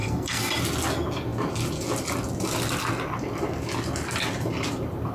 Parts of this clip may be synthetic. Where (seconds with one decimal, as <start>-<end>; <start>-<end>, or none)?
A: 0.0-0.5